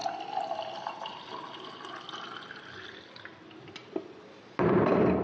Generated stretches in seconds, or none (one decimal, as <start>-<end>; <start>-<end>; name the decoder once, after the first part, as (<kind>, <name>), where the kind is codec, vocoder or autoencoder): none